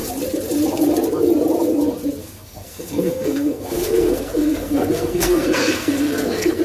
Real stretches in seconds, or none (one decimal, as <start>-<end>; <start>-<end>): 0.0-2.2